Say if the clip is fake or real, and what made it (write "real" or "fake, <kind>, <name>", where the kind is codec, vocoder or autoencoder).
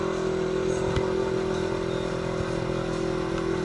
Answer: real